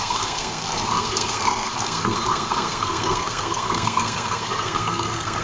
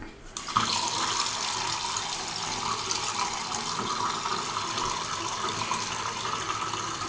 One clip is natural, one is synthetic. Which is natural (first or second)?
second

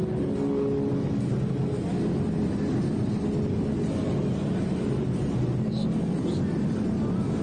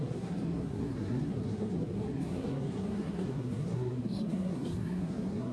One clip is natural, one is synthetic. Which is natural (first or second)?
first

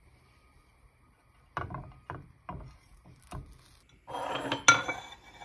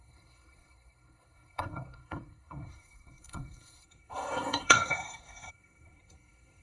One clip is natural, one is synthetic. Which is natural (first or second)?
first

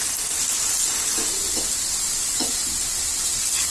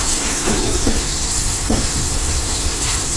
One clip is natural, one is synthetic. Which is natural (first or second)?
first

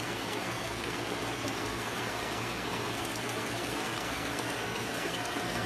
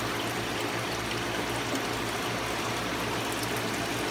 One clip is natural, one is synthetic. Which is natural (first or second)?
second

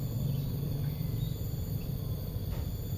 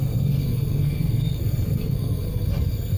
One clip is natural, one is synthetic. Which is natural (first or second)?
first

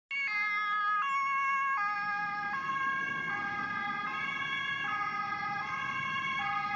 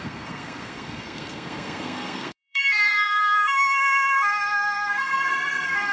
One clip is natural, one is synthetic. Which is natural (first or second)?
first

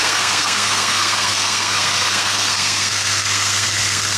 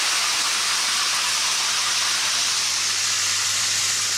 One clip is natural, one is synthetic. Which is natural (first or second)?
second